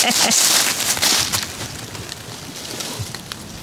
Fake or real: real